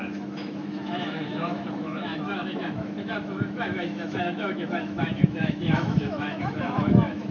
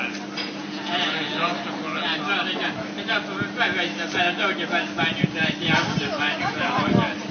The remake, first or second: first